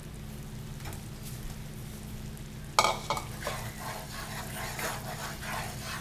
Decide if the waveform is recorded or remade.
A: recorded